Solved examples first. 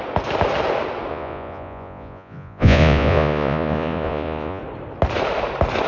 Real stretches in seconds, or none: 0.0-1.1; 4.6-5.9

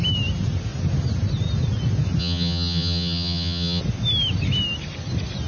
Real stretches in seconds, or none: 0.0-2.2; 3.8-5.5

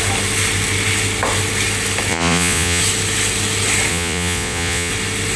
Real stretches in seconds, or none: 0.0-2.1; 2.8-3.9; 4.9-5.4

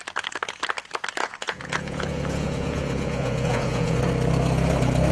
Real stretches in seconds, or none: 0.0-1.2; 4.0-5.1

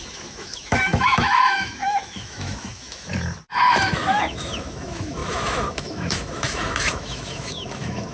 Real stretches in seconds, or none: 3.1-3.7

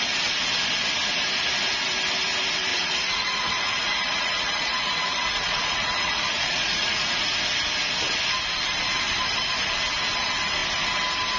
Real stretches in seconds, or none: 0.0-2.7; 7.2-11.4

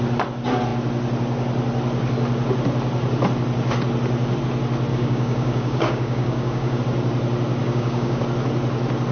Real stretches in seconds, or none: 0.0-4.9; 6.8-7.6; 8.2-9.1

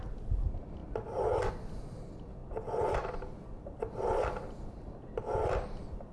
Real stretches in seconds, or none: 0.0-6.1